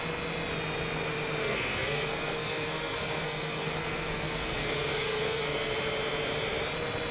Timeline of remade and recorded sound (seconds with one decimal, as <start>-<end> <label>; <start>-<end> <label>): 0.0-1.4 recorded; 1.4-5.7 remade; 5.7-7.1 recorded